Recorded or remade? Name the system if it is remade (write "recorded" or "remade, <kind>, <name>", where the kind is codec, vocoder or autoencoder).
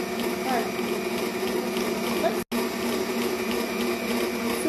recorded